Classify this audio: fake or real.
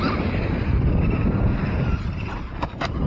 real